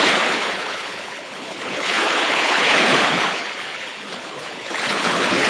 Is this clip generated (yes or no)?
yes